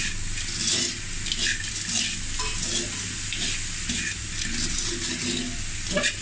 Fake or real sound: real